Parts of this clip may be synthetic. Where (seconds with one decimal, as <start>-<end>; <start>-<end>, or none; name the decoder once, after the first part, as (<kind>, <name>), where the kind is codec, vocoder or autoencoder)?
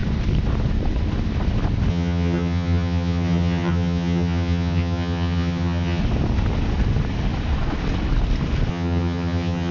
1.9-6.0 (vocoder, HiFi-GAN); 8.7-9.7